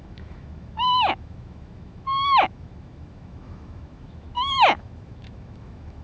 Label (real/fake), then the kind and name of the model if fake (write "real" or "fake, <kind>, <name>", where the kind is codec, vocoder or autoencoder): fake, autoencoder, DAC-VAE